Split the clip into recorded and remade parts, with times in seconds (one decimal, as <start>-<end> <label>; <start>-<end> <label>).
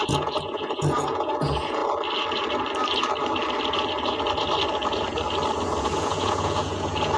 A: 0.0-1.8 remade; 1.8-5.8 recorded; 5.8-7.2 remade